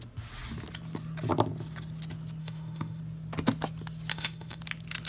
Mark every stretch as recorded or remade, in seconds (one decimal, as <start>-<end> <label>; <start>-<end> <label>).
0.0-2.4 recorded; 2.4-3.0 remade; 3.0-4.1 recorded; 4.1-4.6 remade; 4.6-5.1 recorded